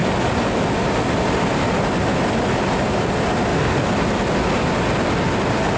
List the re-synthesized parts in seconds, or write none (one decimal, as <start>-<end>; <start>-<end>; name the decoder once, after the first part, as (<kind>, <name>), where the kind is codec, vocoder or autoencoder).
none